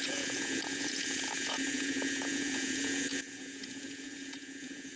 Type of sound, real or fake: fake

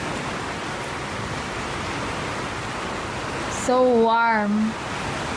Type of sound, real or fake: real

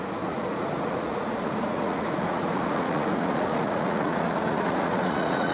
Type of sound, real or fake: fake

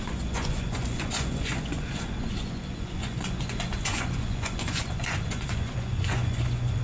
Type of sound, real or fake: fake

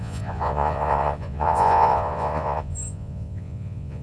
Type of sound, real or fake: fake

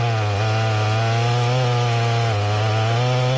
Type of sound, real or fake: real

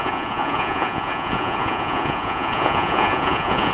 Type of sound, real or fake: fake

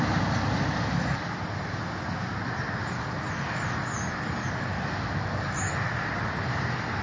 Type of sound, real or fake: real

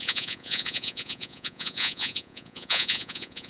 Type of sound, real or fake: fake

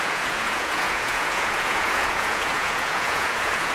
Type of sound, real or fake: fake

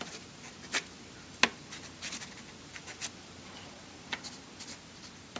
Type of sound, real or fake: real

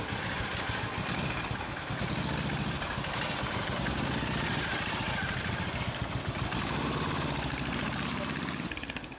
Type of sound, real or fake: real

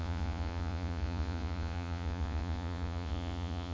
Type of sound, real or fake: fake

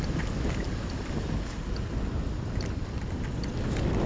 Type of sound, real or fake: real